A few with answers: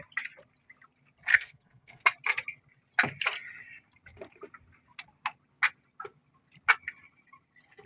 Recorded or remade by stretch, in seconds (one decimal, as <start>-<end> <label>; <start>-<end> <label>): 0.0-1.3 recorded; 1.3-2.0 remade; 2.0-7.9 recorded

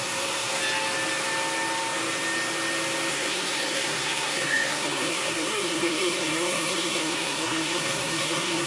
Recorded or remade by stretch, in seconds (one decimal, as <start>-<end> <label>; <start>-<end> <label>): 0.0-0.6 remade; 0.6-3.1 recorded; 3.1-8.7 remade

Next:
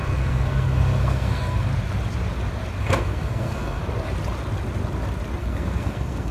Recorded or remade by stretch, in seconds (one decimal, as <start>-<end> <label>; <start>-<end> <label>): 0.0-1.7 remade; 1.7-2.8 recorded; 2.8-3.8 remade; 3.8-5.4 recorded; 5.4-6.3 remade

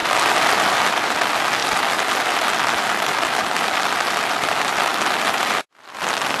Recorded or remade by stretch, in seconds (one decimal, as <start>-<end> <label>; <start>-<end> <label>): 0.0-6.4 recorded